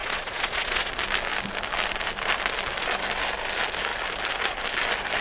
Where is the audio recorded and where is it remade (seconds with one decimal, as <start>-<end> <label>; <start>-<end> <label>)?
0.0-0.9 remade; 0.9-5.2 recorded